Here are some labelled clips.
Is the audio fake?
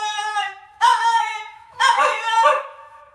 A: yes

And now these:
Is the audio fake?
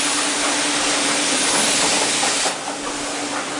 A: no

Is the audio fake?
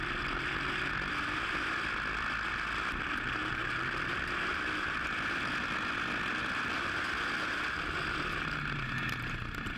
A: no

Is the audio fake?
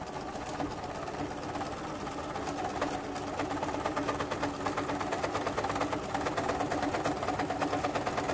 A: no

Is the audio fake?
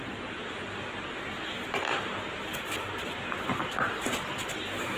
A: no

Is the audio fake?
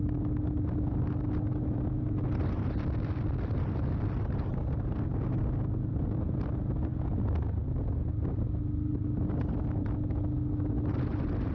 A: no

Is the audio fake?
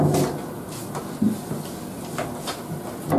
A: no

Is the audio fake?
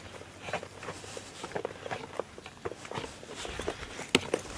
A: no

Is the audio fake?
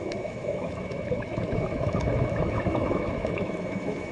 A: yes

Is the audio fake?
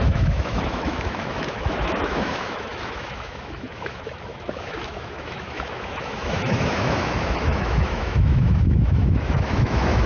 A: yes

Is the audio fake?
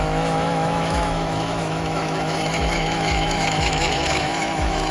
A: yes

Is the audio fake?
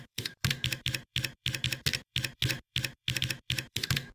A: yes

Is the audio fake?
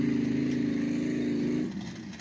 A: no